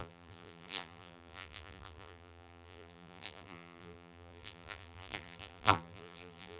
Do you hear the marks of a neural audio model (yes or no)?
yes